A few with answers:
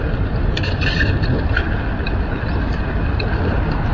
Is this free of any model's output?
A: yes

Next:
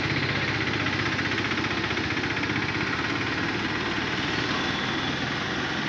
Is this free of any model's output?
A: yes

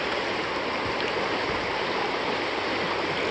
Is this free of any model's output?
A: no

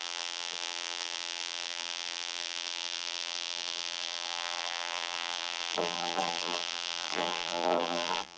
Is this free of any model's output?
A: no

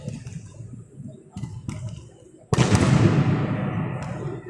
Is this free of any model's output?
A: yes